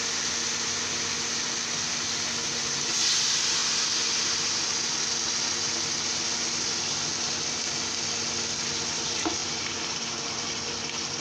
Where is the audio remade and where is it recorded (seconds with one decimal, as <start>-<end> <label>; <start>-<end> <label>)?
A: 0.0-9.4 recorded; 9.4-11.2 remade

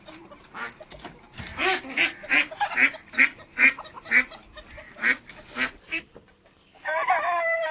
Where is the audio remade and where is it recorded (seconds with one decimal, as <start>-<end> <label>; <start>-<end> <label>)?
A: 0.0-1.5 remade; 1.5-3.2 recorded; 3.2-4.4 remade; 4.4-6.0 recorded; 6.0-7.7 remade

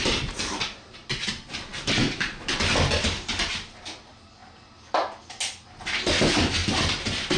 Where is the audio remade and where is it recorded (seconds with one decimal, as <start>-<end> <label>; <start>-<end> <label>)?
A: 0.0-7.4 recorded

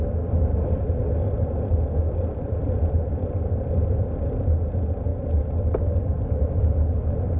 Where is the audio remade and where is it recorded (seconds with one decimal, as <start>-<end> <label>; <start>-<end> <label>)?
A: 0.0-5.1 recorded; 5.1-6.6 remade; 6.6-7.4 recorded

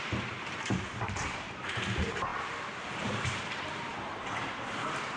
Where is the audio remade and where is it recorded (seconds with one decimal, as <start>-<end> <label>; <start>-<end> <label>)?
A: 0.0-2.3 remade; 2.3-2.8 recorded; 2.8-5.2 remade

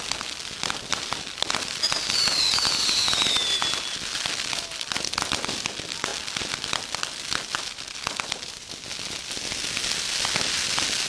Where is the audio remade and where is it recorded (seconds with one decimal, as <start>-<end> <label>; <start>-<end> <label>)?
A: 0.0-0.9 recorded; 0.9-5.1 remade; 5.1-11.1 recorded

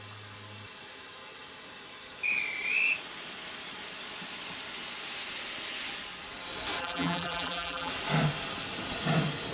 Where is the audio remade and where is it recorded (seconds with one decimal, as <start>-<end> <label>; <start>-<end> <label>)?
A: 0.0-6.8 recorded; 6.8-7.9 remade; 7.9-9.5 recorded